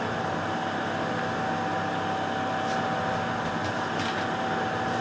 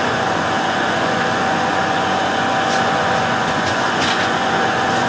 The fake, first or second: second